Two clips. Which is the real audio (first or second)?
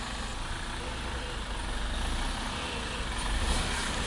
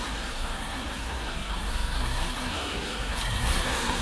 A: first